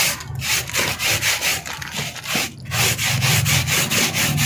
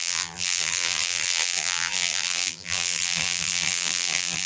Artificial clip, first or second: second